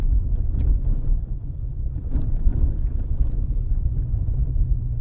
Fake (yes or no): yes